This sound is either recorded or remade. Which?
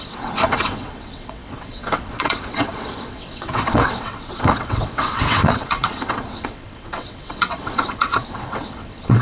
remade